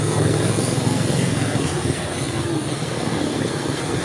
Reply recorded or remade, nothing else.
remade